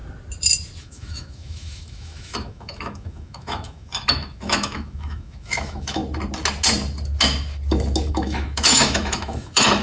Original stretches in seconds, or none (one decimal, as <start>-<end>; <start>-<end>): 0.0-0.8; 6.0-8.1